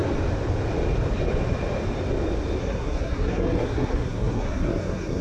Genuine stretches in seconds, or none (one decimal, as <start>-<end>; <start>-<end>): 0.0-2.6

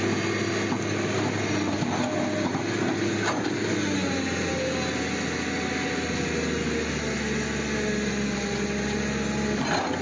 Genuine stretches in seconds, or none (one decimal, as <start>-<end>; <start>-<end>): 0.0-10.0

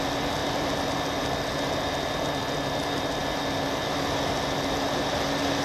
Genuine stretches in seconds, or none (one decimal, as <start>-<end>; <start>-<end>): 0.0-5.6

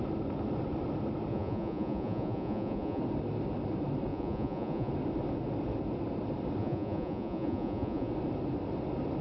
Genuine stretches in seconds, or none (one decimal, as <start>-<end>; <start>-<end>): 0.0-1.3; 3.0-4.1; 4.9-6.6; 8.1-9.2

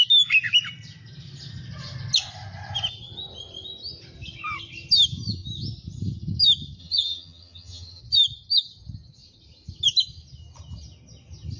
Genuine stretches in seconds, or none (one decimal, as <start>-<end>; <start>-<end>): 0.0-6.8; 8.0-11.6